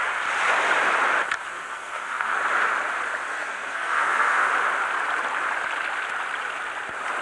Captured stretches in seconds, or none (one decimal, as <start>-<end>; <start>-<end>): 0.0-1.5; 2.4-3.3; 4.5-7.2